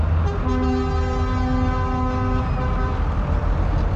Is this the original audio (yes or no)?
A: yes